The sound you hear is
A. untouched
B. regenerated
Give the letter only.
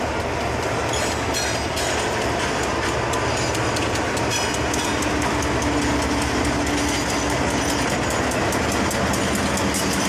A